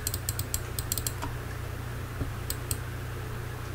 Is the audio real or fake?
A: real